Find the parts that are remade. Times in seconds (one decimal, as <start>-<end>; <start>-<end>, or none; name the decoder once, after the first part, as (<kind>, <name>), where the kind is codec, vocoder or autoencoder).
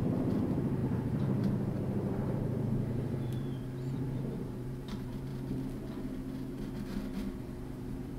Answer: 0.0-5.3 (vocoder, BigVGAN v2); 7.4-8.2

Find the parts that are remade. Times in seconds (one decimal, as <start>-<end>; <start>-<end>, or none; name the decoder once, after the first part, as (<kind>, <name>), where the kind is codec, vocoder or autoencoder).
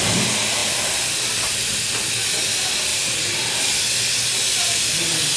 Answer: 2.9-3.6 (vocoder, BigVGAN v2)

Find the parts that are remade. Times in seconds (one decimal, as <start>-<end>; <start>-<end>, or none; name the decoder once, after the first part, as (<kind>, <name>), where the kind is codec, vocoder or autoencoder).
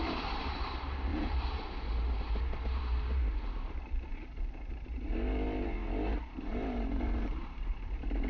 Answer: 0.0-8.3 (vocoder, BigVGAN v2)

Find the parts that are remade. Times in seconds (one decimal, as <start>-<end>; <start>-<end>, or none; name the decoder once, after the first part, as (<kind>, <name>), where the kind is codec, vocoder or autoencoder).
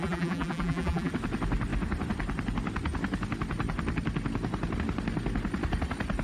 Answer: 0.0-1.1 (vocoder, BigVGAN v2)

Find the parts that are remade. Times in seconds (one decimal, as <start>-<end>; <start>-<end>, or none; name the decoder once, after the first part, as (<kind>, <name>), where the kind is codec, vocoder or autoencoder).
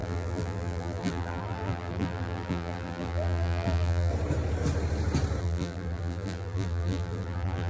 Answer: 0.0-4.1 (vocoder, BigVGAN v2); 5.4-7.7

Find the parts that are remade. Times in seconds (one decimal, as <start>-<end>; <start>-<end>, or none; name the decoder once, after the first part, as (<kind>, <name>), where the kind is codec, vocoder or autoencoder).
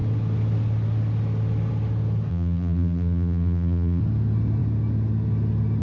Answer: 2.3-4.0 (vocoder, BigVGAN v2)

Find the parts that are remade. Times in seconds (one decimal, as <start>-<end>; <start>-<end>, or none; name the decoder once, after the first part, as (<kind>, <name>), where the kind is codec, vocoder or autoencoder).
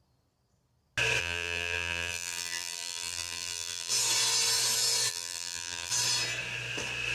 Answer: 1.2-3.9 (vocoder, BigVGAN v2); 5.1-5.9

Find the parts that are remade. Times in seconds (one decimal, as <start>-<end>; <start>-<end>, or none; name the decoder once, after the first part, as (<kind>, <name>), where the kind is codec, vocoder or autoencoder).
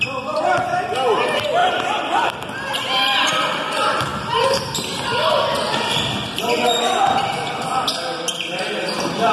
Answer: 1.6-2.3 (vocoder, BigVGAN v2)